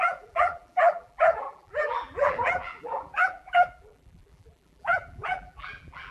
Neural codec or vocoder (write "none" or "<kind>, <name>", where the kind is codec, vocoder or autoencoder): vocoder, BigVGAN v2